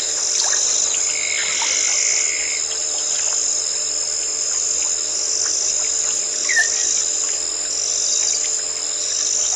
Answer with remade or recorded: recorded